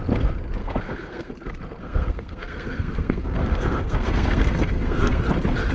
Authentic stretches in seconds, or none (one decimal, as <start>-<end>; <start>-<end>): 0.0-0.6; 1.3-1.8; 5.2-5.7